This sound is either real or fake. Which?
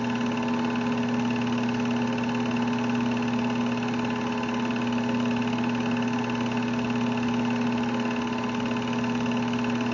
real